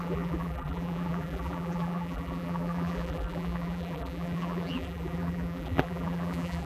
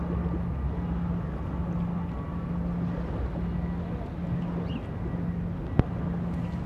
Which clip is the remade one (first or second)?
first